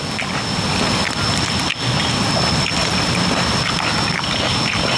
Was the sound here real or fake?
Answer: real